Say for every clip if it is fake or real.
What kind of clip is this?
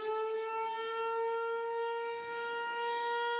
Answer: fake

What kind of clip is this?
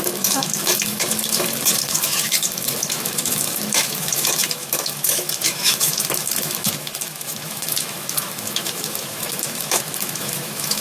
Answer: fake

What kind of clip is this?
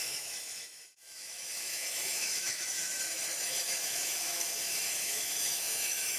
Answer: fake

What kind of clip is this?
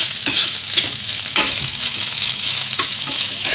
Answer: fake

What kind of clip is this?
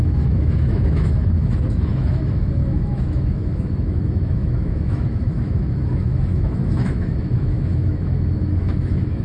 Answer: fake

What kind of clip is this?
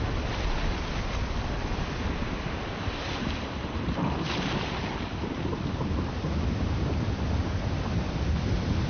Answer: real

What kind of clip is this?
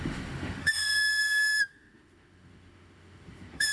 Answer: fake